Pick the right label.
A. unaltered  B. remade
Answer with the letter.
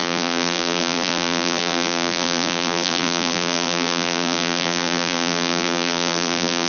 B